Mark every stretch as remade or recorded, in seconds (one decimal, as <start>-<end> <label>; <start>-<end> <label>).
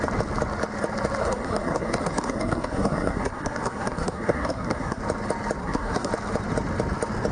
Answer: 0.0-1.2 recorded; 1.2-5.0 remade; 5.0-5.6 recorded; 5.6-6.1 remade; 6.1-7.3 recorded